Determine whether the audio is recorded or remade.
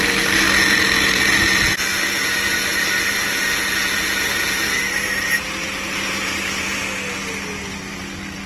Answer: recorded